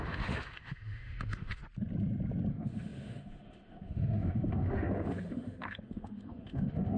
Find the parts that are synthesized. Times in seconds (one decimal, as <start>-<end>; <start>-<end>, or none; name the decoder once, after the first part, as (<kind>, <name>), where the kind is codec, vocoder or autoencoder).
0.0-1.6 (autoencoder, DAC-VAE); 2.5-7.0